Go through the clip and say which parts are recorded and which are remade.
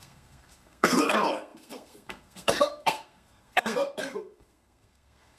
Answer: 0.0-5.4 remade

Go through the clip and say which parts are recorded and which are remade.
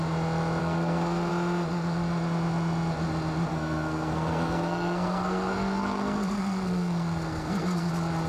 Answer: 0.0-0.6 recorded; 0.6-1.3 remade; 1.3-3.5 recorded; 3.5-7.9 remade; 7.9-8.3 recorded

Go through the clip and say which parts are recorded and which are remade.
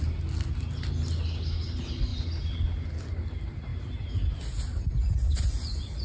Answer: 0.0-6.0 recorded